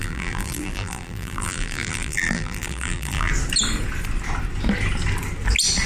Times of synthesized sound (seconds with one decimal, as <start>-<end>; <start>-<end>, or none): 0.0-3.3